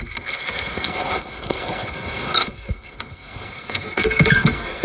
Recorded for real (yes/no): no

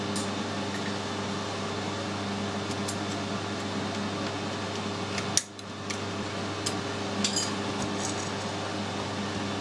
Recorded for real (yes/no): yes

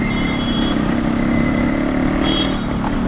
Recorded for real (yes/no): yes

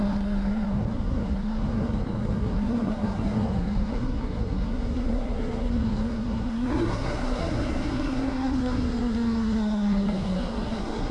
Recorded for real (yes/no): no